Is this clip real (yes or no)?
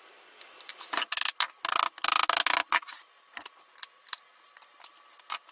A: yes